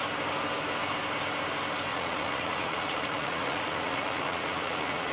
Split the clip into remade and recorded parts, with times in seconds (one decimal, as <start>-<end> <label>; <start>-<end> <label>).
0.0-1.9 recorded; 1.9-5.1 remade